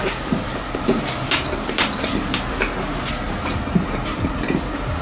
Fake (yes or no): no